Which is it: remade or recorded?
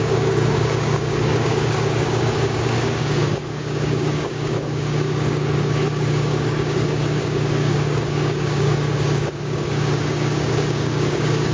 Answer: remade